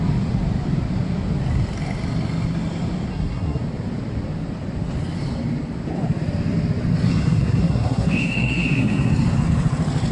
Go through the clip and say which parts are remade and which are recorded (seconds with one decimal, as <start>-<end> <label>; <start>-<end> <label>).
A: 0.0-3.1 recorded; 3.1-3.6 remade; 3.6-7.1 recorded; 7.1-9.1 remade; 9.1-10.1 recorded